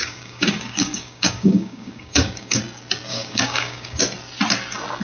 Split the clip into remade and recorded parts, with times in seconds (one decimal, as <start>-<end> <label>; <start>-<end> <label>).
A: 0.0-2.6 remade; 2.6-3.1 recorded; 3.1-4.0 remade; 4.0-5.0 recorded